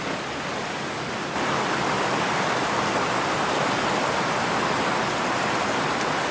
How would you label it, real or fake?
real